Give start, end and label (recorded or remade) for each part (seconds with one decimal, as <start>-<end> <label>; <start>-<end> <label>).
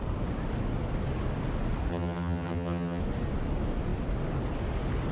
0.0-1.9 recorded; 1.9-3.0 remade; 3.0-5.1 recorded